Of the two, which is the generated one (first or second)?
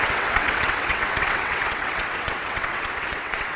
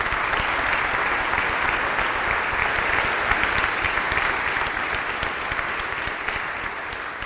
first